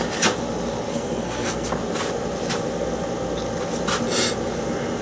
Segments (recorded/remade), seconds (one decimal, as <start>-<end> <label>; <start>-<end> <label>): 0.0-0.9 recorded; 0.9-1.7 remade; 1.7-5.0 recorded

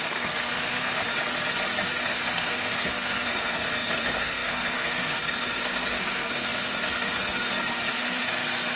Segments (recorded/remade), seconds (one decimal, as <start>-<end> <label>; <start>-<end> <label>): 0.0-1.0 remade; 1.0-2.0 recorded; 2.0-8.8 remade